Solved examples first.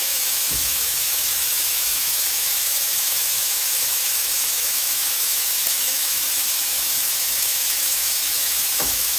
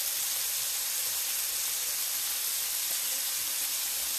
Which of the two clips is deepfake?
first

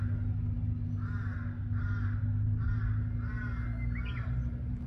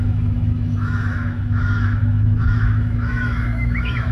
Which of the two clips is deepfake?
second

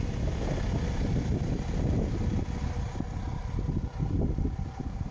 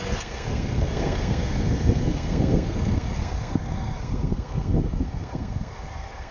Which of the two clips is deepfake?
second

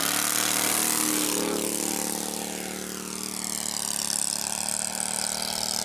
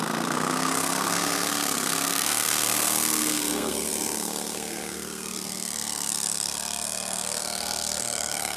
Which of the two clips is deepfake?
second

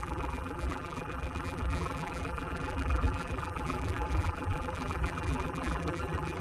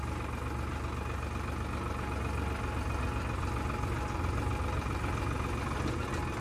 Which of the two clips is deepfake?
first